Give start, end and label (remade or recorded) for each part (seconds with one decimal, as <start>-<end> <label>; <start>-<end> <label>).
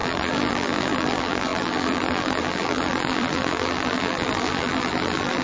0.0-5.4 remade